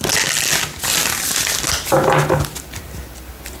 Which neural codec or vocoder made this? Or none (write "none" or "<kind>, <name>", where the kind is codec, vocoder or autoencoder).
none